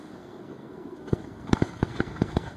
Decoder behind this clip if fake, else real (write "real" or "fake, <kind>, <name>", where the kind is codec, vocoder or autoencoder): fake, codec, SNAC